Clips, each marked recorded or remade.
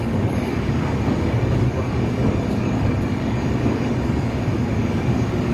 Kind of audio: remade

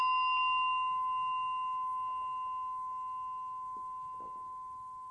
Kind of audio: recorded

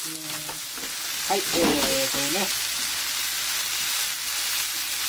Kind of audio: recorded